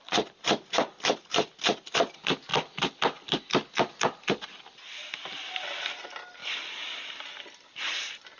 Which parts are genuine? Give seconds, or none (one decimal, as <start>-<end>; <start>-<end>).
0.0-8.4